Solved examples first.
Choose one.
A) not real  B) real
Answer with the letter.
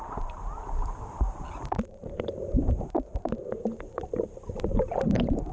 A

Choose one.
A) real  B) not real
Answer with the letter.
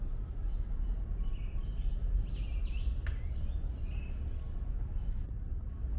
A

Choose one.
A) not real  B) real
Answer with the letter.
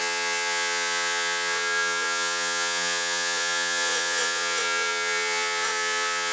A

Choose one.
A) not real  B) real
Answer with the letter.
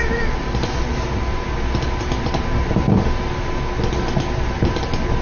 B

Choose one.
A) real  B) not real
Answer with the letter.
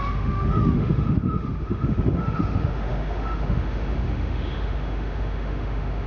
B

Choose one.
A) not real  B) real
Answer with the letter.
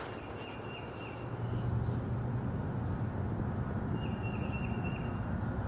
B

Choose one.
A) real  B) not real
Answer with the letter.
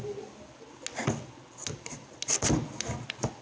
A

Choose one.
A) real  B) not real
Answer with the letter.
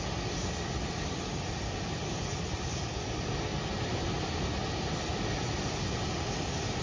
A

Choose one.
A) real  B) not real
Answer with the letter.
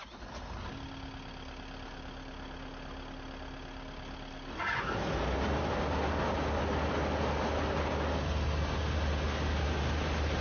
A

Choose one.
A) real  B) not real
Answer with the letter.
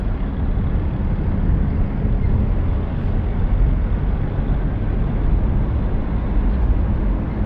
A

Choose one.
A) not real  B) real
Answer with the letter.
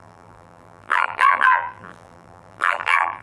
A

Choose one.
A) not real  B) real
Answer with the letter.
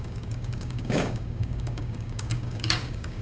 A